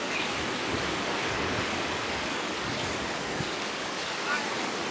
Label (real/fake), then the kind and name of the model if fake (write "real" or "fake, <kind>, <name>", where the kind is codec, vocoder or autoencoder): fake, codec, DAC